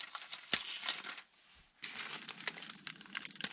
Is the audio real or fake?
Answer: real